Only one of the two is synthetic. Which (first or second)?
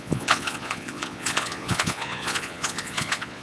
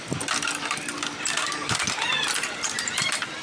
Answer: first